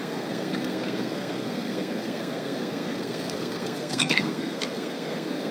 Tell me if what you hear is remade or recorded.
remade